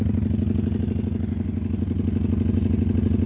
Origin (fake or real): real